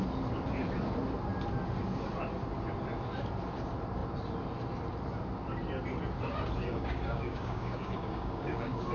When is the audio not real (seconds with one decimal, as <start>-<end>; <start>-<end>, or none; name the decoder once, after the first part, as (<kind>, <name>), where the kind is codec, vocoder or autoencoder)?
6.6-8.9 (codec, DAC)